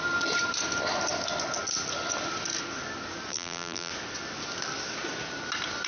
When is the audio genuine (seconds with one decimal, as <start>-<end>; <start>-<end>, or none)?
0.0-3.3; 3.9-5.9

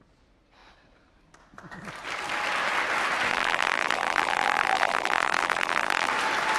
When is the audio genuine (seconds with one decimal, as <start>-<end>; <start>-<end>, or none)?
0.0-3.3; 6.1-6.6

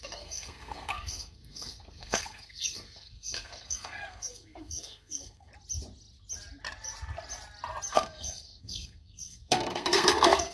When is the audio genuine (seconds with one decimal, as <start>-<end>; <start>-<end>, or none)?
5.5-7.9

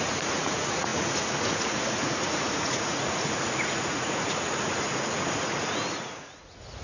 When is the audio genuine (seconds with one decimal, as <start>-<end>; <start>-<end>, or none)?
none